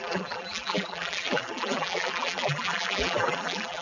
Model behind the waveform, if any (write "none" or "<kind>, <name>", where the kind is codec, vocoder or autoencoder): vocoder, BigVGAN v2